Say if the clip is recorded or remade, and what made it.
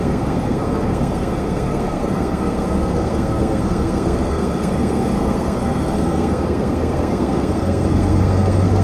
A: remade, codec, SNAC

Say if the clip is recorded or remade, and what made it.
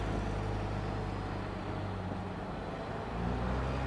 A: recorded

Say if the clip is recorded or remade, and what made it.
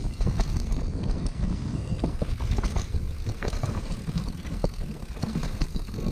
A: remade, codec, SNAC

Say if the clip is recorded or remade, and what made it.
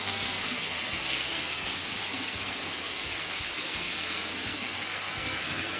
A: remade, codec, SNAC